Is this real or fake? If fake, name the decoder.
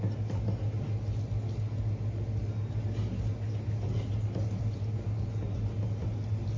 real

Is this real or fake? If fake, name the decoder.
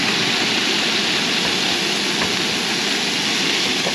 real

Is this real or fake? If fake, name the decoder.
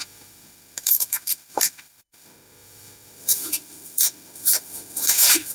fake, autoencoder, DAC-VAE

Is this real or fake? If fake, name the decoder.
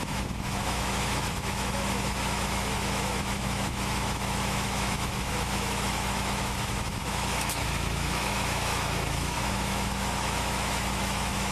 fake, autoencoder, DAC-VAE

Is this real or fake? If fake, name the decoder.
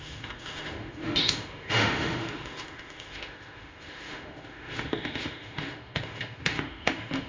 fake, autoencoder, DAC-VAE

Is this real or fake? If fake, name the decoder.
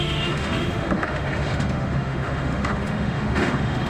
fake, autoencoder, DAC-VAE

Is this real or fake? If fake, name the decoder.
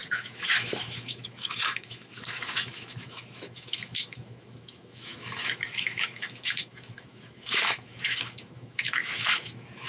fake, autoencoder, DAC-VAE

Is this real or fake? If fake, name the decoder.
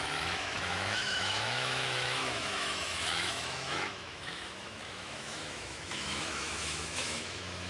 fake, autoencoder, DAC-VAE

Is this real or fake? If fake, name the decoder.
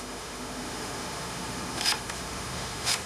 fake, autoencoder, DAC-VAE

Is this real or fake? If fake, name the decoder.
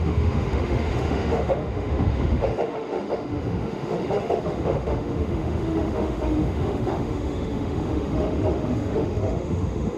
fake, autoencoder, DAC-VAE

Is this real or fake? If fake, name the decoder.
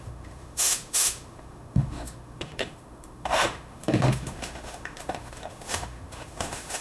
fake, autoencoder, DAC-VAE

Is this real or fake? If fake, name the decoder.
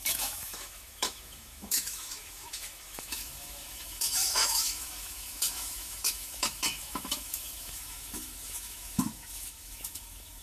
fake, autoencoder, DAC-VAE